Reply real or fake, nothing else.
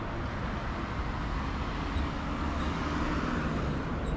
real